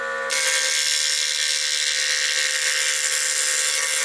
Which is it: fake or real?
real